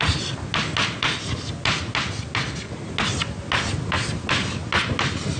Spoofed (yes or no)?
no